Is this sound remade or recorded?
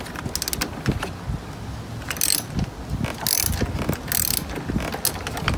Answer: recorded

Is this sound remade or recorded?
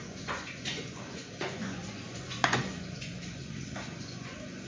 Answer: remade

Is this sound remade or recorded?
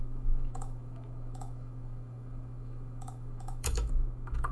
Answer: remade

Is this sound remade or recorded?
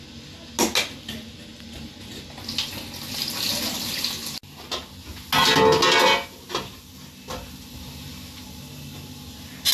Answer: recorded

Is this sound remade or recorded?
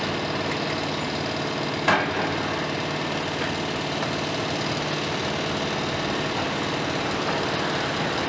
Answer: recorded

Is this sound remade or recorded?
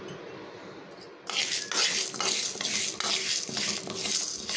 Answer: recorded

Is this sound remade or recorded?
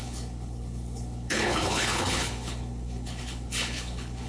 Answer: remade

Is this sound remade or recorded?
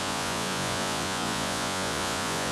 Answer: remade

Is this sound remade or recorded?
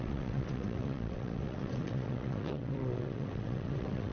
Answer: remade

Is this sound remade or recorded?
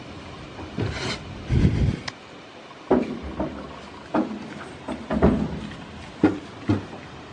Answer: recorded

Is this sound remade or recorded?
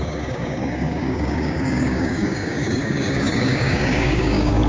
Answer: remade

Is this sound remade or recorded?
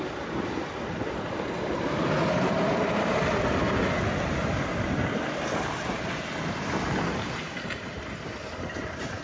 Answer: recorded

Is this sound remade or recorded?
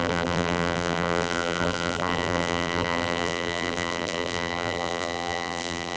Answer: remade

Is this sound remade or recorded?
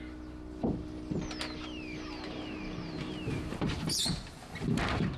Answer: recorded